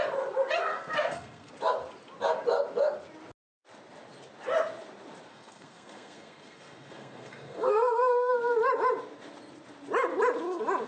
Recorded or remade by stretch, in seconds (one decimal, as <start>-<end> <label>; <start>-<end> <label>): 0.0-0.6 recorded; 0.6-1.5 remade; 1.5-5.3 recorded; 5.3-8.3 remade; 8.3-10.9 recorded